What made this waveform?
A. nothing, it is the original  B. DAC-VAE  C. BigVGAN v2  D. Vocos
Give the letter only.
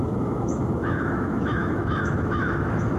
B